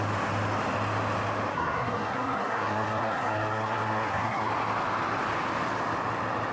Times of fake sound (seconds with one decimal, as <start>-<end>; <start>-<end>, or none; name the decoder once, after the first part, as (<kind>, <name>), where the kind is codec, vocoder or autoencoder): 1.5-4.5 (codec, SNAC)